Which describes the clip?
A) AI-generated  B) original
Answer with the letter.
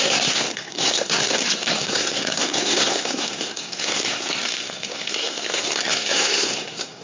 A